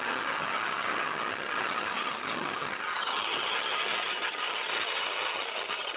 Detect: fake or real fake